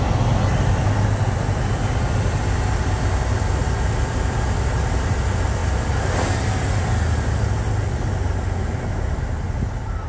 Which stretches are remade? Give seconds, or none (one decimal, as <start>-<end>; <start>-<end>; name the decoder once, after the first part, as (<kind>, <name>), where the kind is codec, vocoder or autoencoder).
none